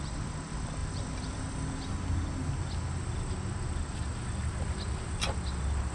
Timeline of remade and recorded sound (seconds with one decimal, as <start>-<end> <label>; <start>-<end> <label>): 0.0-5.9 recorded